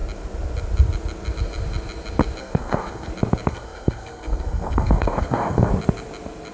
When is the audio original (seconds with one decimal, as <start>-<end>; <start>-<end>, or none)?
0.0-2.4; 3.1-3.5; 5.7-6.5